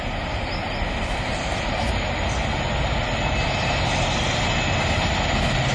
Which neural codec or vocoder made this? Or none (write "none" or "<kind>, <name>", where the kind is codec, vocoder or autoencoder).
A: none